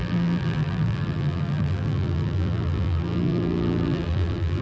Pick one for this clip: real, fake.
fake